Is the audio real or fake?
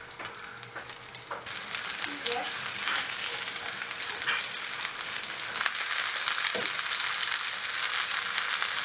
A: real